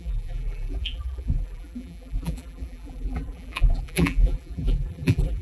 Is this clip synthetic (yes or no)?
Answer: yes